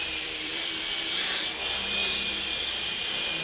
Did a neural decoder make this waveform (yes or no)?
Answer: yes